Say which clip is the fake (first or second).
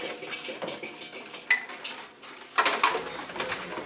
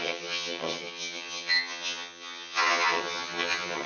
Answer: second